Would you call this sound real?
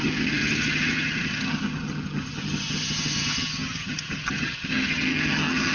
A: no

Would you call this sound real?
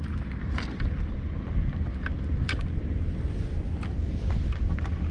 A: yes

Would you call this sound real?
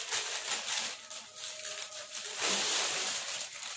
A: no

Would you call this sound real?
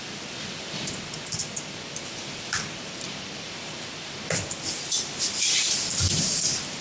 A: yes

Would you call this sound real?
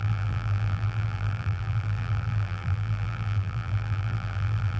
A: no